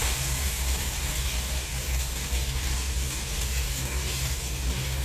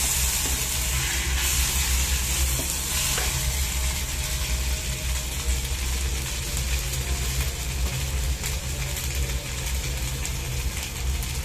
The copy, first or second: first